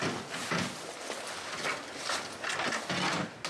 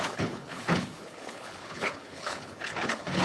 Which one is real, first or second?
first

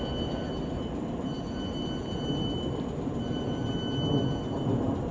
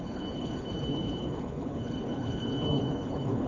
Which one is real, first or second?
first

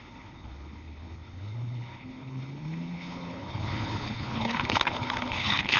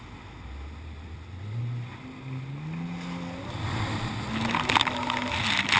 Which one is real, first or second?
second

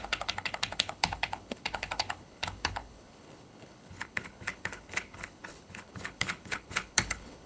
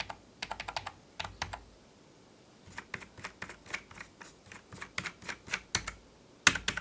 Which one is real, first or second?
second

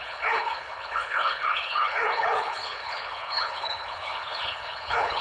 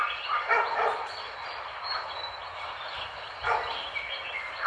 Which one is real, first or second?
second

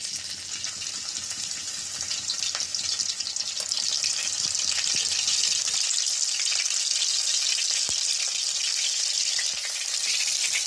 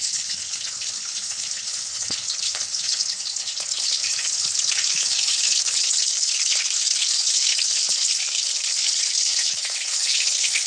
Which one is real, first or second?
first